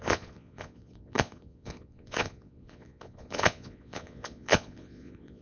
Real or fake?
fake